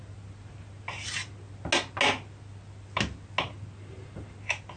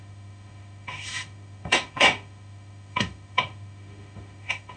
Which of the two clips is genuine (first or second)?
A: first